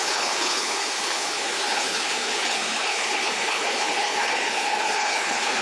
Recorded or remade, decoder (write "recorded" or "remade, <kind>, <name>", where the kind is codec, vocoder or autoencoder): remade, codec, HILCodec